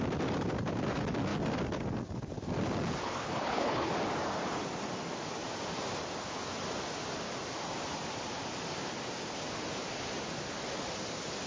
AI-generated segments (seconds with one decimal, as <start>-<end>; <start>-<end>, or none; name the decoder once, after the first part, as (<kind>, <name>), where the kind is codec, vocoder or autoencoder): 3.0-3.9 (codec, HILCodec)